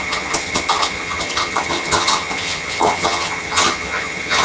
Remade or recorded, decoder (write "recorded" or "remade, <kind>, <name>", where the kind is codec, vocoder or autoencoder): remade, vocoder, HiFi-GAN